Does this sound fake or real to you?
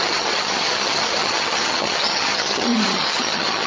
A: fake